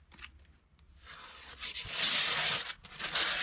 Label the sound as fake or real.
real